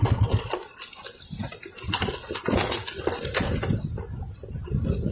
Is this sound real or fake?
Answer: real